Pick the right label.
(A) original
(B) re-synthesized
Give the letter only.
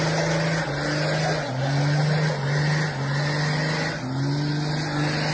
A